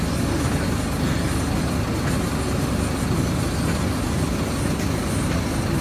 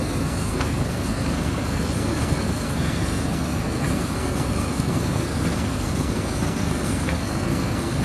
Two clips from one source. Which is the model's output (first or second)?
second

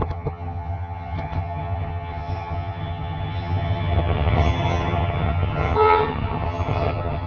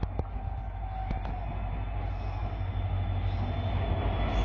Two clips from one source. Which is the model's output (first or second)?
first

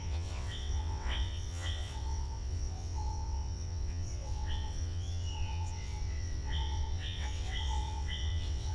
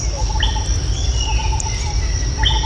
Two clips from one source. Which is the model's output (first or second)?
first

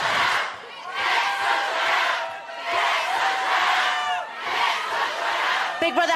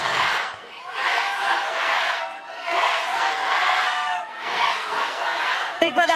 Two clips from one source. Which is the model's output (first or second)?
second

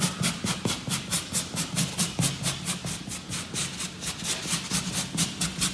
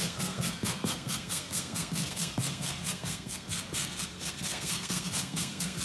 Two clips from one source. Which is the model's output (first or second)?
second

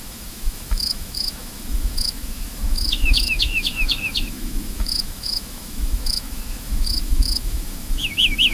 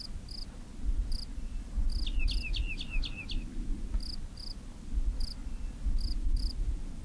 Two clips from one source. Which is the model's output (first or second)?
first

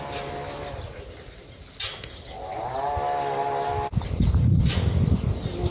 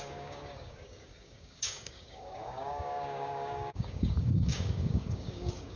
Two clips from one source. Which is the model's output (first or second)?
second